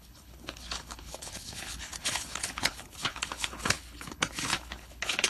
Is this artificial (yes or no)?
yes